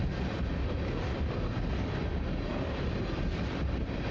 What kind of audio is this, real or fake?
real